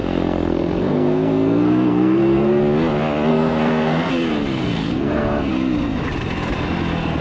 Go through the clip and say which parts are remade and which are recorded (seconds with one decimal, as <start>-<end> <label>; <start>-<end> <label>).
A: 0.0-2.6 remade; 2.6-3.3 recorded; 3.3-4.1 remade; 4.1-4.6 recorded; 4.6-5.5 remade; 5.5-7.2 recorded